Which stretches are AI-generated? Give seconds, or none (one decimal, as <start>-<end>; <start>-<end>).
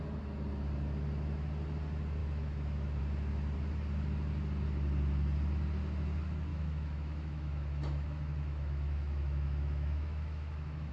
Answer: 2.2-3.0; 6.5-10.9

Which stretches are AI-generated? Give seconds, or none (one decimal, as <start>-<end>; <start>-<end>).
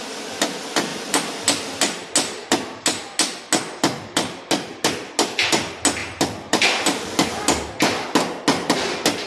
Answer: none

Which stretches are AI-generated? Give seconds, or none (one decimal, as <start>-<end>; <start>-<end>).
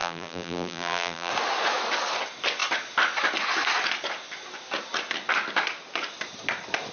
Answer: 0.0-1.3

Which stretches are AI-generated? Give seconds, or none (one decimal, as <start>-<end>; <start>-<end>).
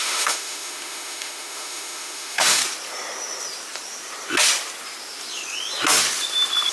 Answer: 0.0-2.6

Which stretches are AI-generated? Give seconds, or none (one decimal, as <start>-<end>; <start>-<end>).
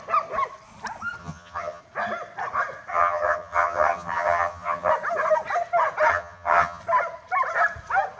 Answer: 1.2-1.8; 2.9-4.9; 6.1-6.8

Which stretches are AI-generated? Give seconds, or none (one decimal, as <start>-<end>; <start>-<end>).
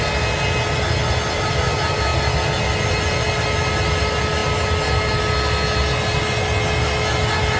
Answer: none